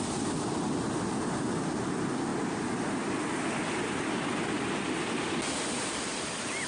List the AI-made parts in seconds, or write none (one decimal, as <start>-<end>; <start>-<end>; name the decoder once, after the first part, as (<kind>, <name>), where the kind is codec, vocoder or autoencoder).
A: none